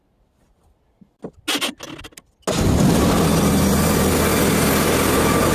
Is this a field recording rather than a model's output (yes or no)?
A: yes